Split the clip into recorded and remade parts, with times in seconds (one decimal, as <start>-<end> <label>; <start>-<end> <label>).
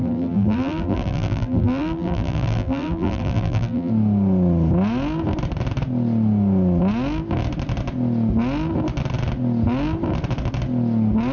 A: 0.0-3.9 remade; 3.9-11.3 recorded